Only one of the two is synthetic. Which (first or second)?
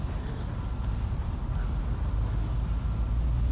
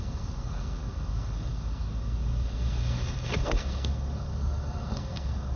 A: second